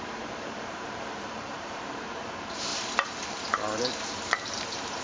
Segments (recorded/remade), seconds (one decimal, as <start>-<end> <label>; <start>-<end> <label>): 0.0-2.7 remade; 2.7-3.8 recorded; 3.8-5.0 remade